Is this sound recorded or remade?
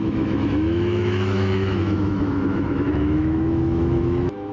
remade